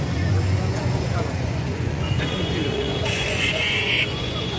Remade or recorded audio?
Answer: remade